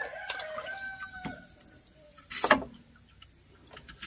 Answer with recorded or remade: recorded